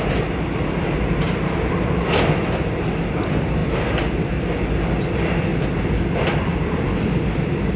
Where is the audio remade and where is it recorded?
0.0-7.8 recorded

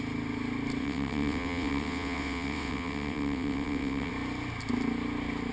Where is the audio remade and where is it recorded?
0.0-0.8 recorded; 0.8-4.1 remade; 4.1-5.5 recorded

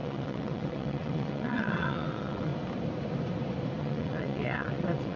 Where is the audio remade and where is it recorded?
0.0-2.5 remade; 2.5-3.8 recorded; 3.8-5.2 remade